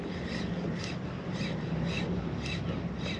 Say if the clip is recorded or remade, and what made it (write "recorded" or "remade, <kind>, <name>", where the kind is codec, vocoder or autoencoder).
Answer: recorded